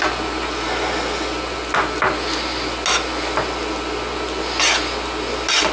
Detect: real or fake real